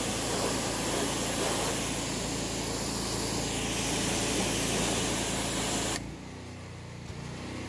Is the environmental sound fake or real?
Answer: real